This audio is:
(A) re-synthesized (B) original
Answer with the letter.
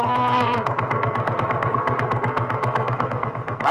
A